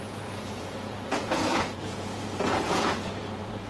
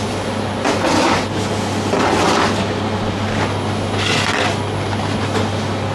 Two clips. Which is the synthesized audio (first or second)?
first